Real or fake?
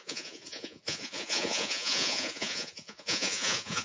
fake